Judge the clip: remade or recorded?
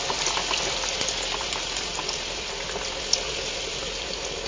recorded